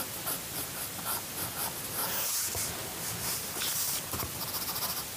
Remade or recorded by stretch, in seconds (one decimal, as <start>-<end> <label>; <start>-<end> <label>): 0.0-2.0 recorded; 2.0-2.5 remade; 2.5-5.2 recorded